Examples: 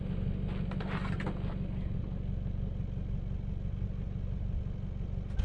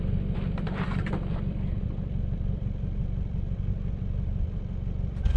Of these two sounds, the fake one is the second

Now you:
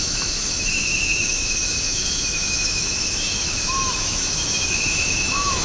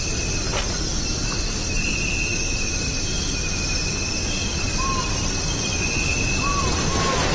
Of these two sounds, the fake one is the first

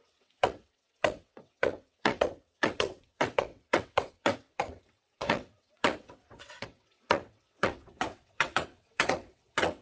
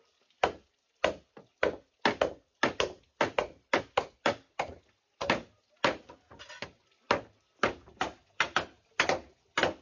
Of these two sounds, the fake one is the first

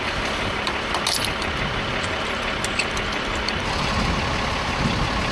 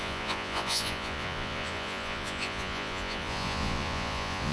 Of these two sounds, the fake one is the second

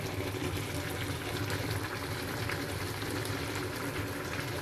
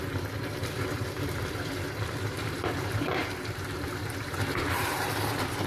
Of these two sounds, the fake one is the second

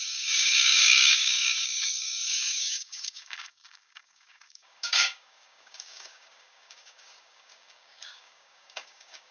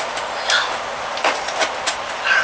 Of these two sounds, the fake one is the first